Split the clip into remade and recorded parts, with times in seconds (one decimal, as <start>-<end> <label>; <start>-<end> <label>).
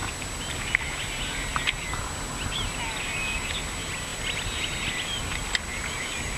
0.0-6.4 recorded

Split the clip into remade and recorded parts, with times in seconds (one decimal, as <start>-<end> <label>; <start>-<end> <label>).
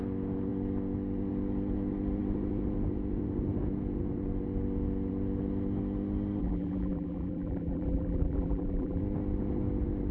0.0-6.4 recorded; 6.4-9.0 remade; 9.0-10.1 recorded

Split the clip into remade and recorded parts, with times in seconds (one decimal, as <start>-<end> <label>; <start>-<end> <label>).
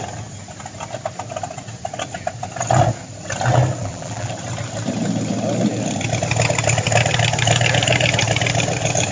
0.0-3.8 recorded; 3.8-4.3 remade; 4.3-9.1 recorded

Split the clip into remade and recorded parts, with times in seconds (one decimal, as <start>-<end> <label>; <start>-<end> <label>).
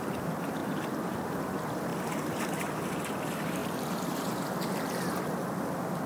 0.0-6.1 remade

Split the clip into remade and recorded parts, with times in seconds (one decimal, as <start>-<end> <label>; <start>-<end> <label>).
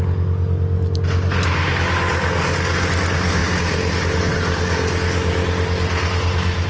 0.0-6.7 recorded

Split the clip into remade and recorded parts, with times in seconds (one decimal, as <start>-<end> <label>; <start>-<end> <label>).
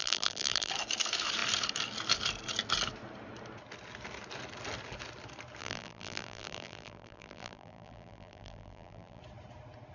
0.0-0.7 remade; 0.7-5.6 recorded; 5.6-9.2 remade; 9.2-9.9 recorded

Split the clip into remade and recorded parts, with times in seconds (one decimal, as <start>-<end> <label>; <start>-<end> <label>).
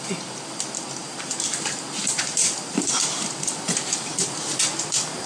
0.0-1.0 recorded; 1.0-4.1 remade; 4.1-5.3 recorded